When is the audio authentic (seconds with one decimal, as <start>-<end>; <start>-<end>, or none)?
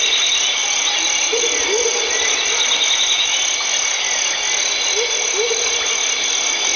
0.0-0.6; 3.6-6.8